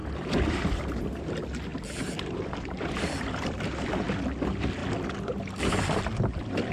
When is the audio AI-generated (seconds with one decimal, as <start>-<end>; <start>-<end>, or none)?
0.0-0.8; 1.7-4.0